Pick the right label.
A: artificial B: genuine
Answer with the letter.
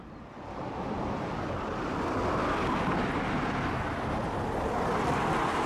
B